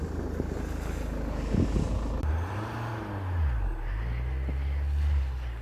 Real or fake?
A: real